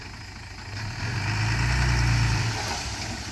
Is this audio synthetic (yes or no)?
no